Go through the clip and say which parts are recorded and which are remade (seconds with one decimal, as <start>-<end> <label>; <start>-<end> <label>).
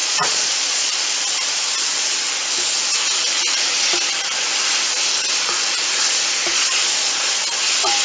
0.0-0.9 remade; 0.9-6.4 recorded; 6.4-7.2 remade; 7.2-8.0 recorded